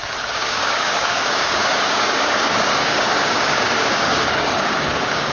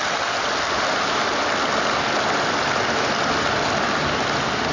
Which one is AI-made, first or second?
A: first